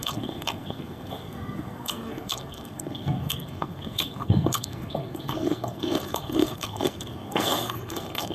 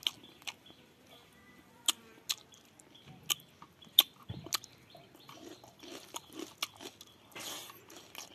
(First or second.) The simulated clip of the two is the first